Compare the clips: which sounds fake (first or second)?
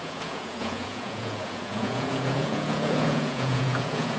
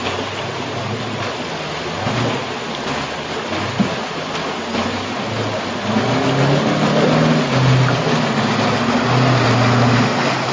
first